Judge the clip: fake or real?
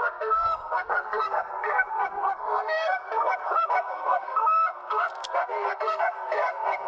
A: fake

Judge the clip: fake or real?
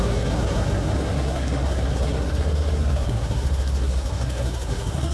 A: fake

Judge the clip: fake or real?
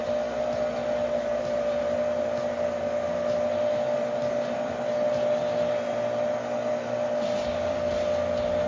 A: real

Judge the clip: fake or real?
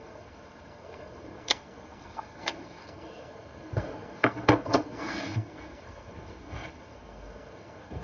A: fake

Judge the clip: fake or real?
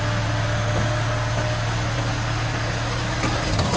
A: real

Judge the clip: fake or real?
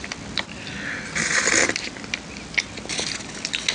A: real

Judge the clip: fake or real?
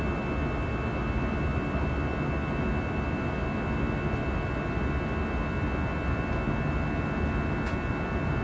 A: real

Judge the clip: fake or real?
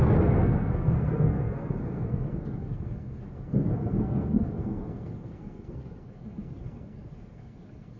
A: fake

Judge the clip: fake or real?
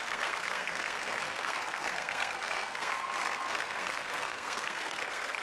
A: fake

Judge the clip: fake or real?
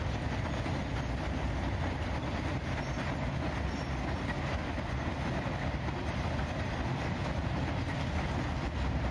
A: real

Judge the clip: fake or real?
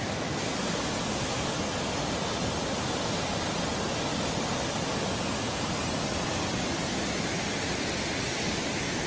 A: real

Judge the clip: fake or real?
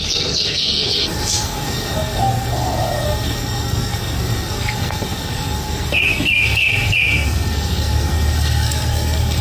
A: fake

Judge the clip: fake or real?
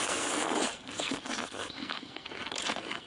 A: fake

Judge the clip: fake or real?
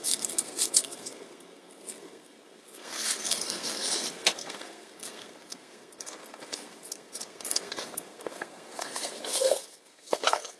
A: fake